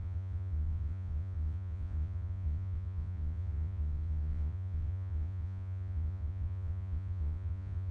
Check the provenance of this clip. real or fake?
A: fake